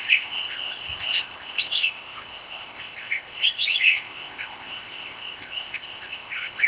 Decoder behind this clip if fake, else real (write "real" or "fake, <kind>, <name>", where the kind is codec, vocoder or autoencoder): fake, codec, ZipCodec